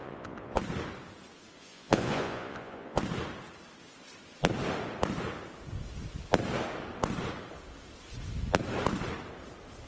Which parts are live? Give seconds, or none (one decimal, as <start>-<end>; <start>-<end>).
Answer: 0.6-1.6; 3.0-9.9